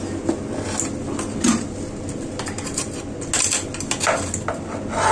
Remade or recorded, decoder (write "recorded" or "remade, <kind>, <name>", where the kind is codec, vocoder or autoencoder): recorded